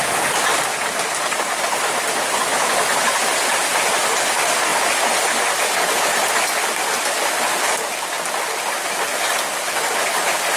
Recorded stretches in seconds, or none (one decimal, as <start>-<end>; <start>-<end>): 0.0-10.6